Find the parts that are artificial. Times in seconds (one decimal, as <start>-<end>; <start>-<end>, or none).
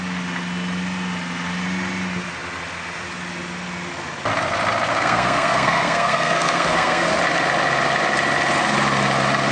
4.9-7.1